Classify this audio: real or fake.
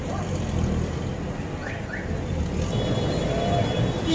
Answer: real